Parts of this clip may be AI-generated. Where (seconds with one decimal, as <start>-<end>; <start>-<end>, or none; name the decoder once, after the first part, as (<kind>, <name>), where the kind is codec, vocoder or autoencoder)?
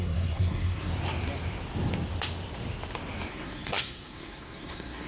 0.0-0.9 (codec, SNAC); 3.3-5.1